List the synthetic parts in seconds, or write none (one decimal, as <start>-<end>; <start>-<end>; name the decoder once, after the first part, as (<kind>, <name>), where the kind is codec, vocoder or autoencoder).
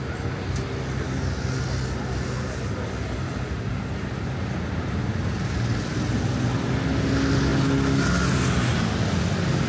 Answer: none